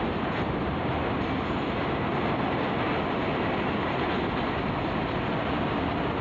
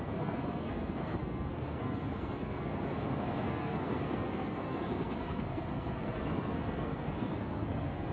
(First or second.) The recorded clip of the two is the first